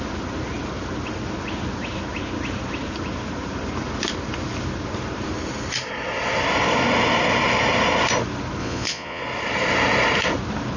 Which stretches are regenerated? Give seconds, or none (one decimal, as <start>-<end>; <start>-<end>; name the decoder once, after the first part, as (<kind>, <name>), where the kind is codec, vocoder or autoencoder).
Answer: 8.6-9.2 (vocoder, Vocos)